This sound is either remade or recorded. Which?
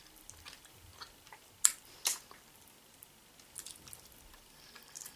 recorded